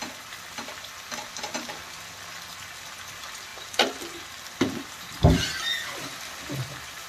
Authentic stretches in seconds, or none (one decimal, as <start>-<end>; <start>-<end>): 0.0-3.5